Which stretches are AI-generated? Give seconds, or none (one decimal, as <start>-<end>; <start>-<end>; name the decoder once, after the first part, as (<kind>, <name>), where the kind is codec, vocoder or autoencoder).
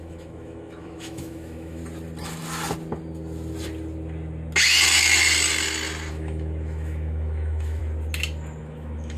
0.0-1.8 (autoencoder, DAC-VAE); 6.1-7.8; 8.6-9.2